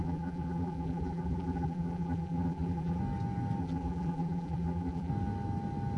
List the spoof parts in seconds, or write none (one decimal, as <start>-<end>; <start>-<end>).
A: 0.0-3.0; 3.6-5.1